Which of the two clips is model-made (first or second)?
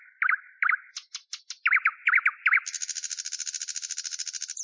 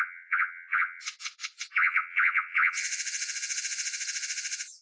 second